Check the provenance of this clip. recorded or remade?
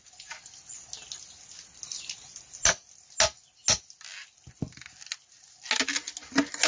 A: recorded